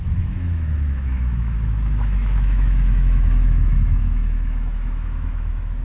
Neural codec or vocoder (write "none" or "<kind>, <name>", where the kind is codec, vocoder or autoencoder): autoencoder, DAC-VAE